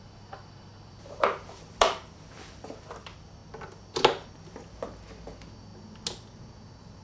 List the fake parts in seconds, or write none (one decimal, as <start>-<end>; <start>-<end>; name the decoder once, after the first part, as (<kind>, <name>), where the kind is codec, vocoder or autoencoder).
0.7-2.6 (vocoder, BigVGAN v2)